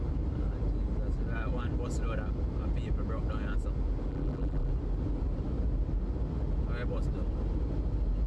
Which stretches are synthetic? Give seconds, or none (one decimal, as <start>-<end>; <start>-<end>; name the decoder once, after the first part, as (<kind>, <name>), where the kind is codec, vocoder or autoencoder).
4.1-4.7 (vocoder, BigVGAN v2)